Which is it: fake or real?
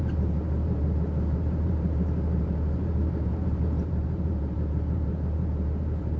fake